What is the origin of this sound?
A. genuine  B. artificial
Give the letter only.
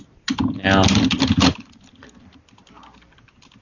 A